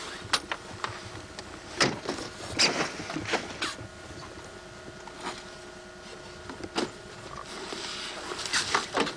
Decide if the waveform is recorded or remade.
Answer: recorded